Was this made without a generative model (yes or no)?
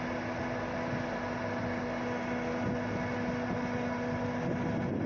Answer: yes